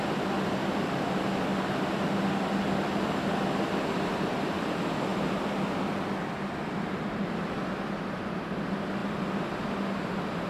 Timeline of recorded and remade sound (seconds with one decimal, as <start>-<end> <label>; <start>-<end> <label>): 0.0-10.5 recorded